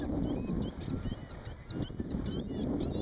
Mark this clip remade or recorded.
recorded